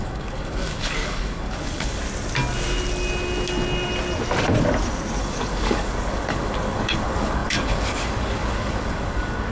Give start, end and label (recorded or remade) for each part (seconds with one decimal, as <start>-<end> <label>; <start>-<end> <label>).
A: 0.0-2.0 remade; 2.0-5.2 recorded; 5.2-9.5 remade